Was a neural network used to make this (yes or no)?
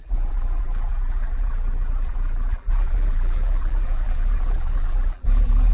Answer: yes